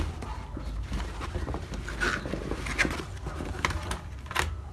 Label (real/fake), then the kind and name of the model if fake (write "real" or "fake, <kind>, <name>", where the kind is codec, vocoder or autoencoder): real